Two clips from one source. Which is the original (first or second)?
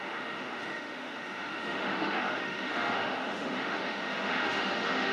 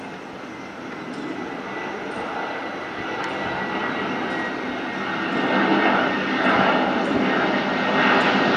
second